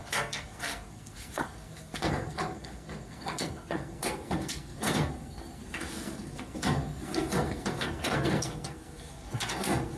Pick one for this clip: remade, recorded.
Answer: remade